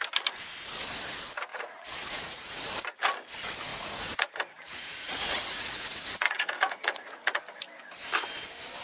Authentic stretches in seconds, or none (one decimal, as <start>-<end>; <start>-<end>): 0.0-1.5; 2.7-3.7; 7.4-8.8